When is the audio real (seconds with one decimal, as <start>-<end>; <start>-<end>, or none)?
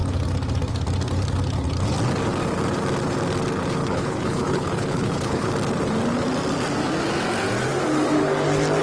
0.0-3.8; 5.5-8.8